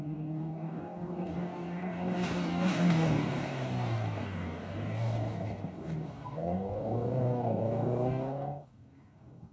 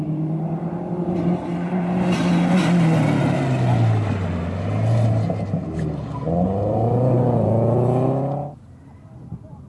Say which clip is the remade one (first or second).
first